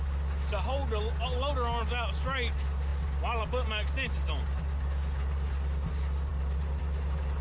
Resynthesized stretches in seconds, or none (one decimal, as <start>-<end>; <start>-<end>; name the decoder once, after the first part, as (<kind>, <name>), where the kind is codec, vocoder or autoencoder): none